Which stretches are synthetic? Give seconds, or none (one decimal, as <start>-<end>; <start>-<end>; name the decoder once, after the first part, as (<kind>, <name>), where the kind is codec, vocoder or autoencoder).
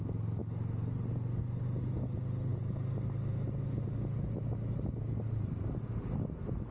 none